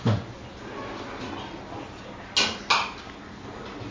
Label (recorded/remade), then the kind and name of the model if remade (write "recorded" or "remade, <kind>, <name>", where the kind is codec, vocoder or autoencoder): recorded